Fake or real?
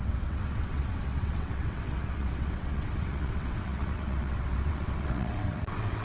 fake